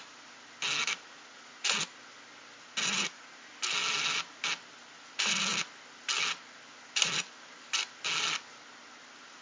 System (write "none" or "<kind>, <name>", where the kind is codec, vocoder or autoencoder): none